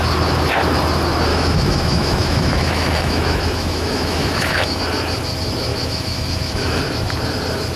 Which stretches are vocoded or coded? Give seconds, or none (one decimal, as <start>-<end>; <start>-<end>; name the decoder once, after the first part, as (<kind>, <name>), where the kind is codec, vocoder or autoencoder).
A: 1.3-4.8 (autoencoder, DAC-VAE); 5.7-6.8